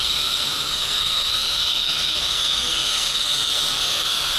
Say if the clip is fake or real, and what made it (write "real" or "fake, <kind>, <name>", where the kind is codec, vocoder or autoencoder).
fake, codec, SNAC